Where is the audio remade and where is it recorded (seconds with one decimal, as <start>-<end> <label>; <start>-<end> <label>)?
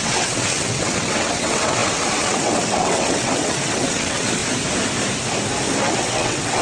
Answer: 0.0-4.4 remade; 4.4-5.8 recorded; 5.8-6.6 remade